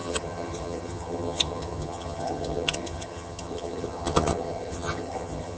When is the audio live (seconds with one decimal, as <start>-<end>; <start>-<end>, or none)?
none